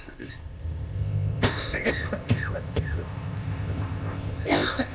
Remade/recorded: remade